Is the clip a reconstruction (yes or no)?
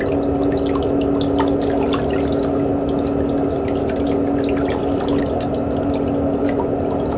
no